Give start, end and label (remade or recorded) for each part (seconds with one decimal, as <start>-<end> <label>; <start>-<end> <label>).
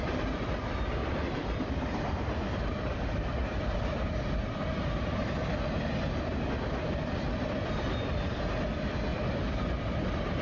0.0-1.0 recorded; 1.0-5.5 remade; 5.5-9.1 recorded; 9.1-10.4 remade